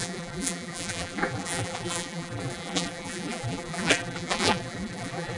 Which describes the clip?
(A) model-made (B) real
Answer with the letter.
A